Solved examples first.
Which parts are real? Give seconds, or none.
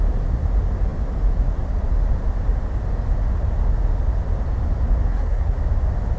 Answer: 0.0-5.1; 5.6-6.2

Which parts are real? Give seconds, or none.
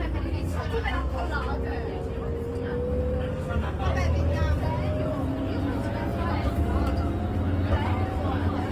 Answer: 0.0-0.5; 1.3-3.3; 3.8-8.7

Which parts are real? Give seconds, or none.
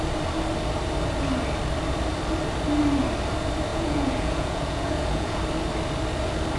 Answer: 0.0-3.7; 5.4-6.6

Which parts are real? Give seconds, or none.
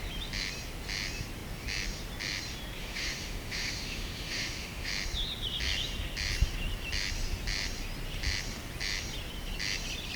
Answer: 0.0-2.8; 4.9-10.2